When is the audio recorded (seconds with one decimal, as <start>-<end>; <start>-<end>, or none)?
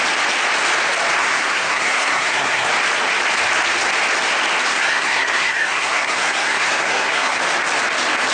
0.0-1.2; 2.7-4.7; 7.4-8.3